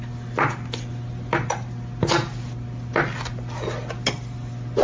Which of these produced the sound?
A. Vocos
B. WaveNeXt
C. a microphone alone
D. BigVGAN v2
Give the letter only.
C